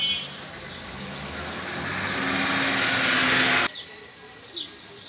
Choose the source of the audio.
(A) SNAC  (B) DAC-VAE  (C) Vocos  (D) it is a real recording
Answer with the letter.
D